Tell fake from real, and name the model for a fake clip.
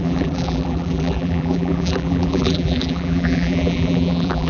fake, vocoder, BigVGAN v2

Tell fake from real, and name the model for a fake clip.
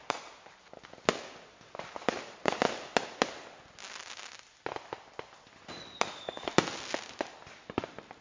real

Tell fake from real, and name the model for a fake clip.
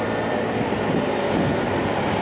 fake, vocoder, BigVGAN v2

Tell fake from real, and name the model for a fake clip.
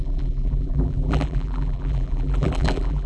fake, vocoder, BigVGAN v2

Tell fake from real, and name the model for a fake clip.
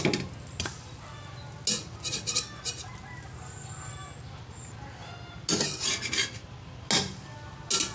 real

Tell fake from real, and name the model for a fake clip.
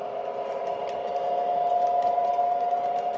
real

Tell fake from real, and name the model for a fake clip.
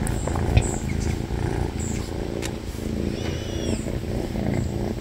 real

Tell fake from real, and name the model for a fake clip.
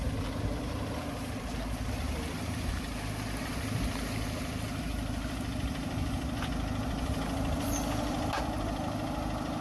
real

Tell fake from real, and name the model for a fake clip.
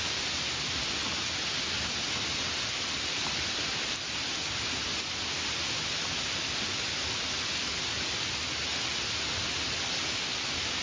real